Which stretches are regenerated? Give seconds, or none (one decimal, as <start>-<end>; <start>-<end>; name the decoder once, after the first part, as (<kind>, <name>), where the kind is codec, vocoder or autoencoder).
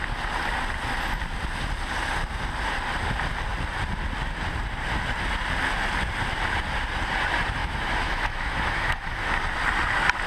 7.6-9.3 (autoencoder, DAC-VAE)